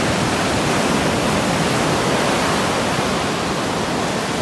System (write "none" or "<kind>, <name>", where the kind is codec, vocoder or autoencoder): none